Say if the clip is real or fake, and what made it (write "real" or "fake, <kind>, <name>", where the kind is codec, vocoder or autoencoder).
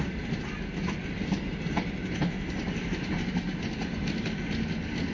real